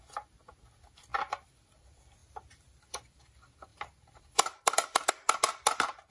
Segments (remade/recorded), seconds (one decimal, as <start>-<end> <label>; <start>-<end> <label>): 0.0-6.1 recorded